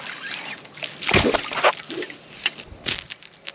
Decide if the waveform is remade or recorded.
recorded